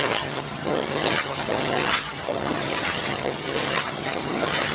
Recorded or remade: remade